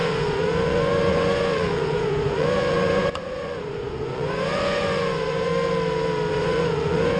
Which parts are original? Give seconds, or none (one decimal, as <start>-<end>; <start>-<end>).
5.5-6.3